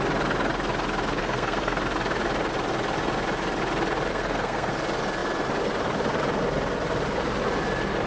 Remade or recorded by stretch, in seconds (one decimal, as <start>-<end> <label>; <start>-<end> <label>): 0.0-1.2 recorded; 1.2-1.8 remade; 1.8-4.1 recorded; 4.1-4.7 remade; 4.7-8.1 recorded